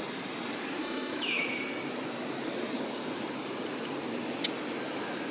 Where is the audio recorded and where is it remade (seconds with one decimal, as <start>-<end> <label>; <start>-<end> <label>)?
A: 0.0-0.8 recorded; 0.8-1.6 remade; 1.6-5.3 recorded